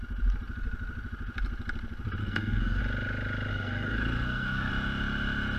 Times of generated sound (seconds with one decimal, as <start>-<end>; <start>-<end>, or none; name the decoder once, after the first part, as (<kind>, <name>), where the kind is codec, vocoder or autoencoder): 2.2-2.8 (codec, SNAC); 3.5-4.7